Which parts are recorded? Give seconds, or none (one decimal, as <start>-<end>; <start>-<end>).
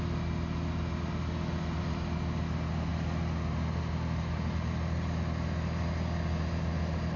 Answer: 0.0-7.2